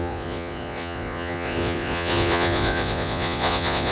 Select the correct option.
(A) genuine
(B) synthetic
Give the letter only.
B